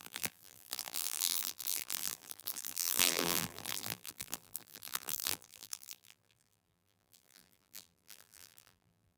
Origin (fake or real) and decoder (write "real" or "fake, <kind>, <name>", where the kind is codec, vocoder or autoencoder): fake, vocoder, BigVGAN v2